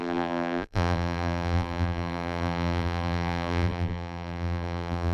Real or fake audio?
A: fake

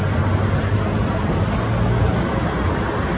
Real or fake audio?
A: real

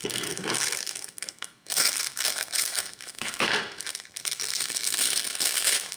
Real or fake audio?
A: fake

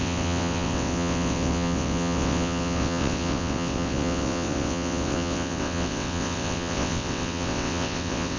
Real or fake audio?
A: fake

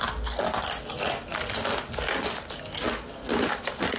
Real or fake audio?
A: real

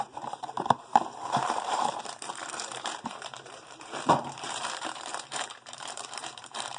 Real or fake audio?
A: fake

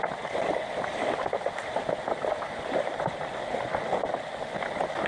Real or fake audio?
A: real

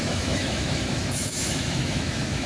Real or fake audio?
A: fake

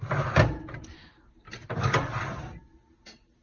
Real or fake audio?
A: real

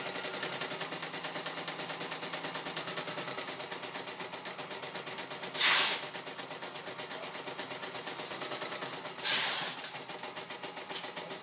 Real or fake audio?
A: real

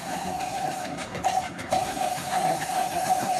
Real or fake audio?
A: fake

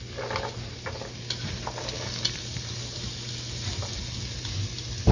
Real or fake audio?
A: real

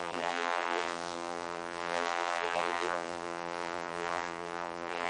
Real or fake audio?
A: fake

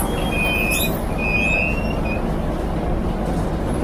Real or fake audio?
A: real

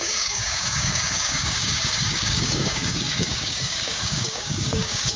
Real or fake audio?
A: fake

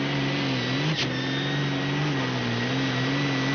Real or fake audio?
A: real